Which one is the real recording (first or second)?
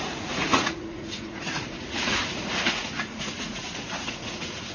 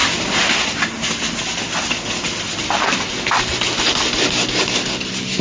second